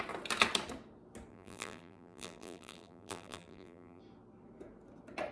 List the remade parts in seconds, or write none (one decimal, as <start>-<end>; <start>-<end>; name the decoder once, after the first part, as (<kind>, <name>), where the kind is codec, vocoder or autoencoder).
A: 1.3-4.0 (vocoder, BigVGAN v2)